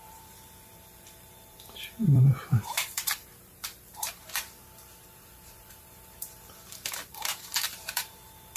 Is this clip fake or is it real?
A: fake